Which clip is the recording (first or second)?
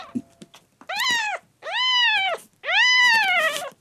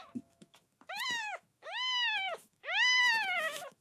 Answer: first